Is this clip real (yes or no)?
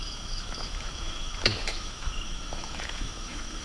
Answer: no